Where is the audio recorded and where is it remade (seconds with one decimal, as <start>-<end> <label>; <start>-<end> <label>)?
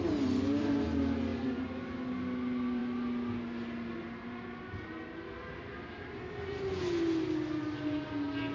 0.0-8.5 recorded